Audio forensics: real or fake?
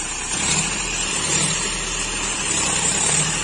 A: fake